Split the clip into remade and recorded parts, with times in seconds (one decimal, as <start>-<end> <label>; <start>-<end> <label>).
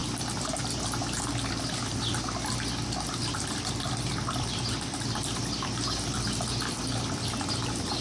0.0-8.0 recorded